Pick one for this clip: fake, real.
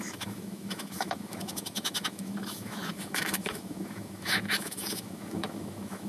fake